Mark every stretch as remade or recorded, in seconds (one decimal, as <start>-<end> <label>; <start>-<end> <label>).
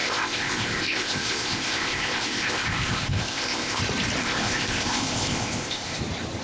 0.0-3.8 remade; 3.8-4.2 recorded; 4.2-6.0 remade; 6.0-6.4 recorded